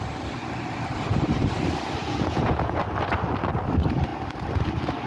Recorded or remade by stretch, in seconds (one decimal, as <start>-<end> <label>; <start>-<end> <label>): 0.0-2.0 recorded; 2.0-2.8 remade; 2.8-5.1 recorded